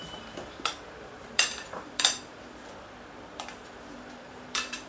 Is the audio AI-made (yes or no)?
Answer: yes